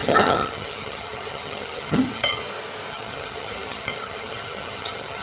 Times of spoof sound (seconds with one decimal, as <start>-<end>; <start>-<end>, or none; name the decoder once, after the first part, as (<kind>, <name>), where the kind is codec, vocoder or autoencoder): 0.0-2.4 (vocoder, HiFi-GAN); 2.9-5.2